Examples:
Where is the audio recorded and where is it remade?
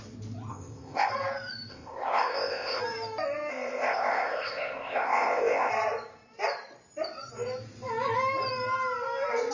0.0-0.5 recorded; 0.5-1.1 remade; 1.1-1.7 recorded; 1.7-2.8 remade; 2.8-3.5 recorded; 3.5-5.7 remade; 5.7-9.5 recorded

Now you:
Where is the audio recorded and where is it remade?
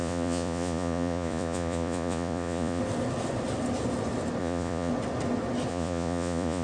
0.0-2.8 remade; 2.8-4.4 recorded; 4.4-4.9 remade; 4.9-5.7 recorded; 5.7-6.6 remade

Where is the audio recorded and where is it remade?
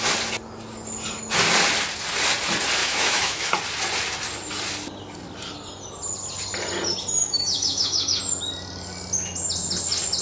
0.0-2.8 recorded; 2.8-3.5 remade; 3.5-7.2 recorded; 7.2-8.2 remade; 8.2-10.2 recorded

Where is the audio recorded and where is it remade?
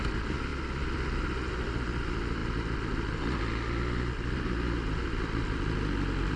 0.0-6.4 recorded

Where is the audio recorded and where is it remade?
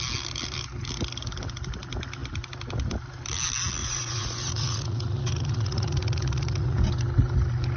0.0-3.8 recorded; 3.8-6.8 remade; 6.8-7.8 recorded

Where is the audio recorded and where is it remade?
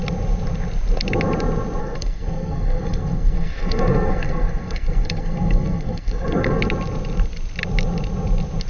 0.0-1.8 recorded; 1.8-6.6 remade; 6.6-8.7 recorded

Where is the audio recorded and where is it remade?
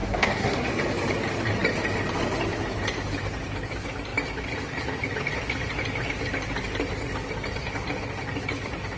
0.0-0.7 remade; 0.7-9.0 recorded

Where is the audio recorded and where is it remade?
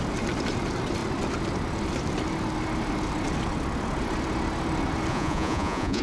0.0-5.1 recorded; 5.1-6.0 remade